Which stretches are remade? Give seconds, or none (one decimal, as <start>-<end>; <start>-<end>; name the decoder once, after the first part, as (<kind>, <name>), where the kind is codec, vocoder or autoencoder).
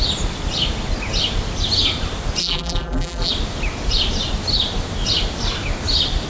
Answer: 2.4-3.3 (vocoder, BigVGAN v2)